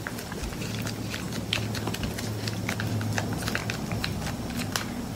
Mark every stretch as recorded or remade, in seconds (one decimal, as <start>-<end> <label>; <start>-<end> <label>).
0.0-5.2 recorded